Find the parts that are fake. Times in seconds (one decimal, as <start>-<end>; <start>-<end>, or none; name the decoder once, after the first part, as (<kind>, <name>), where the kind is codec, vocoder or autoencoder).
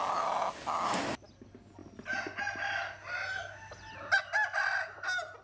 none